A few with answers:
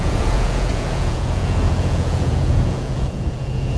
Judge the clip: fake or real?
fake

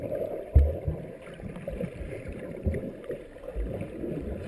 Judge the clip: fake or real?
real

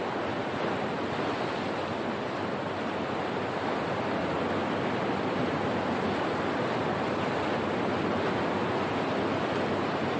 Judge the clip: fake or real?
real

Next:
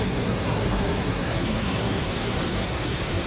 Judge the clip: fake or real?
fake